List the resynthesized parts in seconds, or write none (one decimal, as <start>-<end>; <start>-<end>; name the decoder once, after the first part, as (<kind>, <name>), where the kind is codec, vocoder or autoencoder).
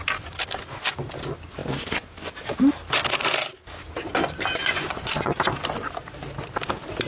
4.6-5.4 (vocoder, Vocos)